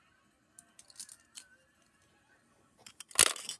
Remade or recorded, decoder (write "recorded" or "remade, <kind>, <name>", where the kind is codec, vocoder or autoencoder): recorded